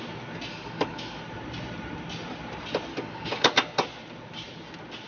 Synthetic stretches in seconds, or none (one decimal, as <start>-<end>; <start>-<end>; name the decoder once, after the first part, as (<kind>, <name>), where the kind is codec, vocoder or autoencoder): 0.5-1.2 (codec, DAC); 2.9-3.5